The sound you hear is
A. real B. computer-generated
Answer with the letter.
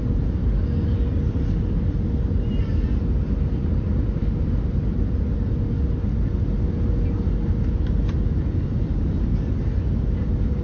A